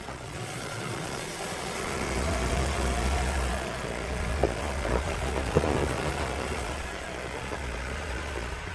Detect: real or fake fake